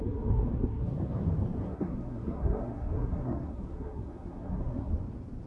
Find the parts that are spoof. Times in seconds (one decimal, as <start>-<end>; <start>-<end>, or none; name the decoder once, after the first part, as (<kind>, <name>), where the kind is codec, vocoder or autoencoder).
0.0-1.2 (codec, SNAC); 1.6-4.9